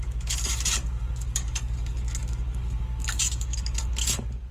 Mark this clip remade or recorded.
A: remade